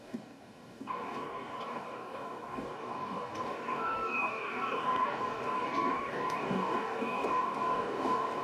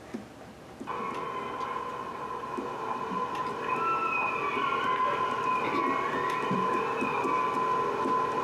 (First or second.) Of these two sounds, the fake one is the first